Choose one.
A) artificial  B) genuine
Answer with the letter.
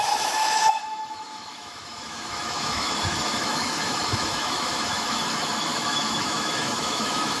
A